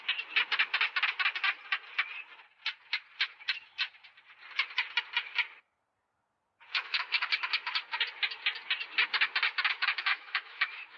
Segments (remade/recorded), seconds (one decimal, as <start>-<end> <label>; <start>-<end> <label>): 0.0-6.7 recorded; 6.7-7.3 remade; 7.3-9.8 recorded; 9.8-11.0 remade